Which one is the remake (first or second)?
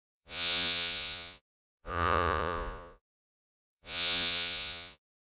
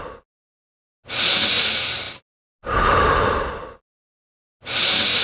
first